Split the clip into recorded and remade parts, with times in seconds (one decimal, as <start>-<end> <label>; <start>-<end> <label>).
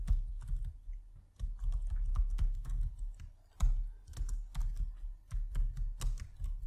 0.0-2.1 recorded; 2.1-2.8 remade; 2.8-6.7 recorded